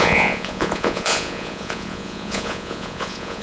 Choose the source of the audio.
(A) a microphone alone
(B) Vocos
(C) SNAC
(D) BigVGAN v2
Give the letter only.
B